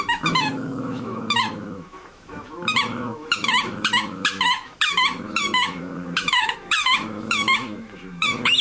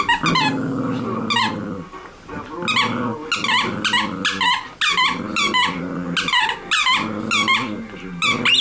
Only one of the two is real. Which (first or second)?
second